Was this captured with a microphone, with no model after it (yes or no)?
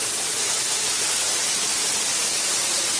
yes